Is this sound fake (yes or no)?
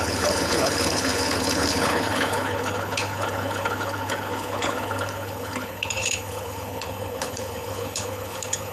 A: yes